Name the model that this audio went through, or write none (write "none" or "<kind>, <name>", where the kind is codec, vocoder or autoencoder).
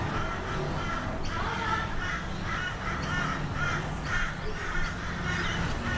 none